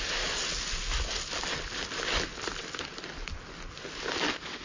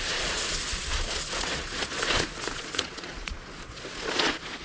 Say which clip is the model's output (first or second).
second